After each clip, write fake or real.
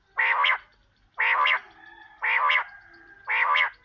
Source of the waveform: real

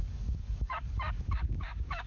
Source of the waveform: fake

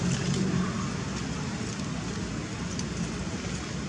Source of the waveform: real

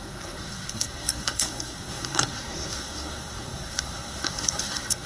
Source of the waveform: fake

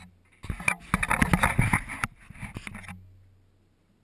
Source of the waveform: real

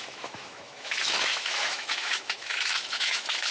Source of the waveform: fake